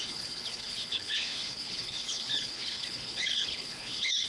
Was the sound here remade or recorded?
remade